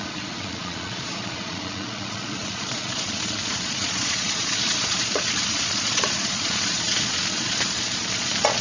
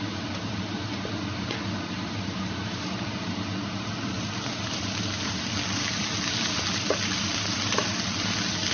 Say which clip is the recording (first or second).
second